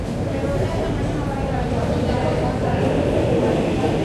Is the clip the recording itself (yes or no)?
yes